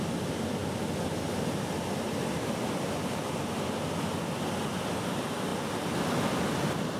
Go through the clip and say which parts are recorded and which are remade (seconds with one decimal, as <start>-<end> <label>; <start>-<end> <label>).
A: 0.0-7.0 recorded